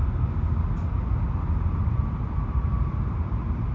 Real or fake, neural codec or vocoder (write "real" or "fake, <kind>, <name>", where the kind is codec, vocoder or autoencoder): real